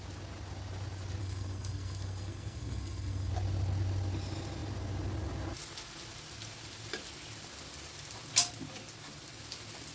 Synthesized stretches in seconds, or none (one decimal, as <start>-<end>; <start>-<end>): 1.2-3.3